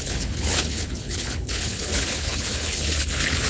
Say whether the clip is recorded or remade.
remade